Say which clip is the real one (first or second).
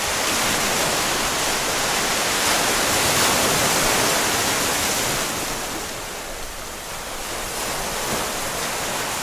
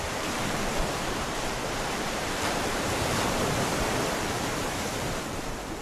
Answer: first